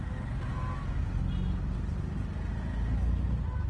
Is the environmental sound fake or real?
real